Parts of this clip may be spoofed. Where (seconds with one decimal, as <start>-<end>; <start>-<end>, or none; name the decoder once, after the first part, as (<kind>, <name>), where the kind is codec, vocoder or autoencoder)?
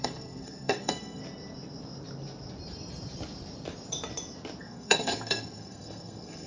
0.0-1.2 (codec, SNAC); 4.6-6.5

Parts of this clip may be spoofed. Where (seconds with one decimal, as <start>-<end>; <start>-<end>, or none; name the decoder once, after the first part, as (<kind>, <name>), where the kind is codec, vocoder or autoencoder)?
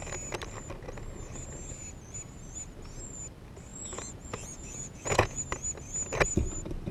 3.7-5.4 (vocoder, Vocos)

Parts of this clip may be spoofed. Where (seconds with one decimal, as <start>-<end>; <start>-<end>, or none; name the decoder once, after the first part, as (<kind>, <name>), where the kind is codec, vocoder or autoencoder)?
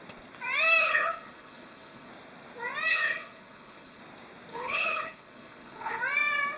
0.8-2.1 (codec, HILCodec); 2.9-4.0; 4.5-6.0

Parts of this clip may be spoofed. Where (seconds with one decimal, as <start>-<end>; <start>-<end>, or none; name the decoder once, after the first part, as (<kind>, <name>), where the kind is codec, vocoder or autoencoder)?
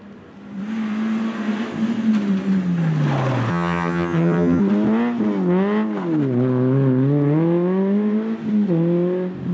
3.5-4.6 (vocoder, HiFi-GAN)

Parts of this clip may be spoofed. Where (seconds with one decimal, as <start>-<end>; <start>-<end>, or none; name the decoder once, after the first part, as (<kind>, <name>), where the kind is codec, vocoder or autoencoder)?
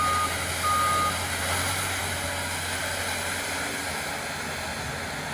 none